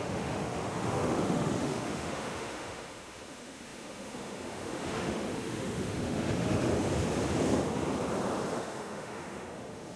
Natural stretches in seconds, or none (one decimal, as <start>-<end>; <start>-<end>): 6.7-8.5